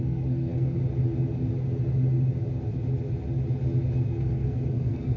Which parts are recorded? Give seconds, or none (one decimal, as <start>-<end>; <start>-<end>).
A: 0.8-3.9